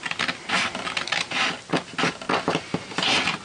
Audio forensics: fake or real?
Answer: real